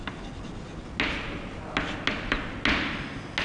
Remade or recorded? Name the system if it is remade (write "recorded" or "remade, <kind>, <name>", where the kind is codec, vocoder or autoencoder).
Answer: recorded